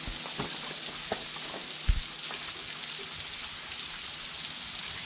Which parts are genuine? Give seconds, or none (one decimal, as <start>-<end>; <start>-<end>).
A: 0.0-5.1